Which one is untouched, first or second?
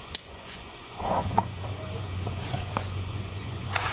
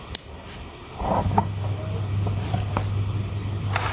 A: second